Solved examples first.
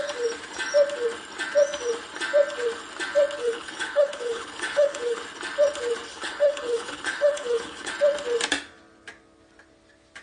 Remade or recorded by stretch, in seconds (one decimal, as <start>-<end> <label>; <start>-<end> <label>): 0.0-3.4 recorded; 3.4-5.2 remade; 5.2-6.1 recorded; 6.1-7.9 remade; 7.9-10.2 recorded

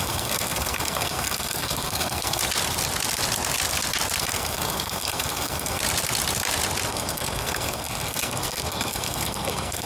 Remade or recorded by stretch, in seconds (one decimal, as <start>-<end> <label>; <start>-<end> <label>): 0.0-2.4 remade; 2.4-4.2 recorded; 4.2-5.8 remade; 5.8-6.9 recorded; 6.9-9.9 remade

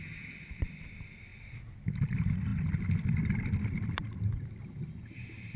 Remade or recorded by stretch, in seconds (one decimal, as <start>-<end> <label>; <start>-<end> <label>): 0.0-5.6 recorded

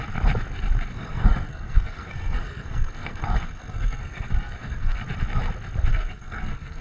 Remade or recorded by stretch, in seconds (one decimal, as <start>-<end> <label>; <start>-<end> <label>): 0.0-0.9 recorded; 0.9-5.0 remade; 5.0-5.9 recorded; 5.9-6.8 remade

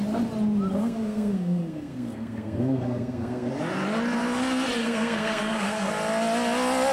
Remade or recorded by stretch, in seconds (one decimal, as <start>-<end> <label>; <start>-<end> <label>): 0.0-0.8 recorded; 0.8-3.5 remade; 3.5-4.8 recorded; 4.8-5.9 remade; 5.9-6.9 recorded